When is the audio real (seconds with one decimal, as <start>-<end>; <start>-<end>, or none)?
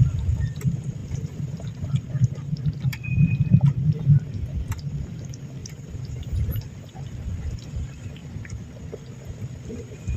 0.0-1.0; 3.4-5.6; 6.6-10.2